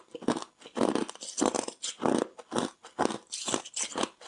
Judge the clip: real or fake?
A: real